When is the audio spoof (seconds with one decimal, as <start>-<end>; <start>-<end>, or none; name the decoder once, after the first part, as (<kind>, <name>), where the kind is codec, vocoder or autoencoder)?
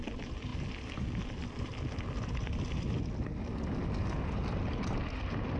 none